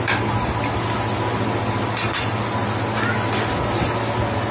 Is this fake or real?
real